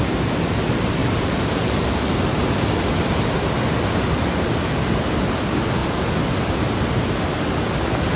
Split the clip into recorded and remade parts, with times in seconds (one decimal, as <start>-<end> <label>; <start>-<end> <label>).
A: 0.0-1.0 recorded; 1.0-2.2 remade; 2.2-8.2 recorded